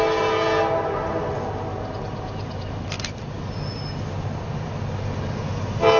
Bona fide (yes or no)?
yes